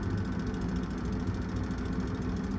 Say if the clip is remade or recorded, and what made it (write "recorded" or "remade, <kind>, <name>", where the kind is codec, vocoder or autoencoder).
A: recorded